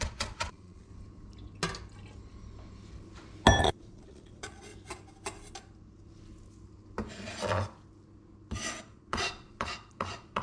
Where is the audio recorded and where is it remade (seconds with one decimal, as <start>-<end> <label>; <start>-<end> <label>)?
0.0-0.9 remade; 0.9-3.6 recorded; 3.6-4.7 remade; 4.7-8.8 recorded; 8.8-10.4 remade